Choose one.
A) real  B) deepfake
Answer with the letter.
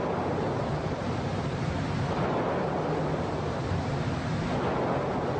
A